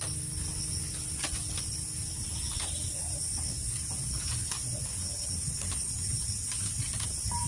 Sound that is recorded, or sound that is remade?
recorded